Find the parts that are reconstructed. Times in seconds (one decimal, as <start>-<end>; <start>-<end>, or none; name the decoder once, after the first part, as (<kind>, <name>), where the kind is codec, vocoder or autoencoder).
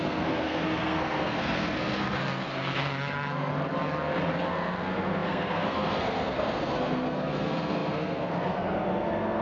0.0-3.5 (codec, SNAC); 4.5-9.4